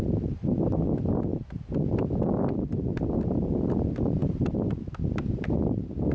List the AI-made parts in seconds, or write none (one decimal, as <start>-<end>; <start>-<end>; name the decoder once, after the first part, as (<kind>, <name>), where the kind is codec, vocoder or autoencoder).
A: none